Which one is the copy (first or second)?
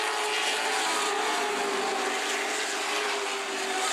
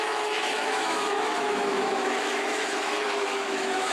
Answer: second